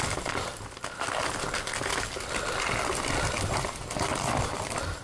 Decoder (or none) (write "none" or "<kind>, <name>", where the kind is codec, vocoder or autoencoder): none